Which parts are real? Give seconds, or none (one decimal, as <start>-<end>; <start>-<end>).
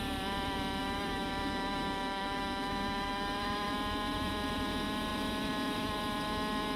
0.0-0.8; 3.7-6.8